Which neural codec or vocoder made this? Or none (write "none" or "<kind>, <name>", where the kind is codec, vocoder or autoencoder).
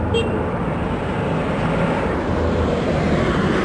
none